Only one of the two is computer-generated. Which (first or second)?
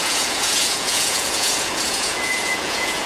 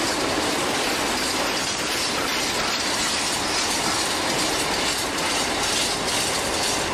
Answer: first